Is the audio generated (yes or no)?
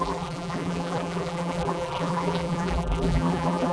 yes